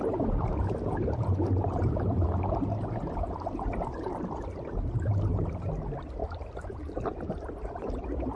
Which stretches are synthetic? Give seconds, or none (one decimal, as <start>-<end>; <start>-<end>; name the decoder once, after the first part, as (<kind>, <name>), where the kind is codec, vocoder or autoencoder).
none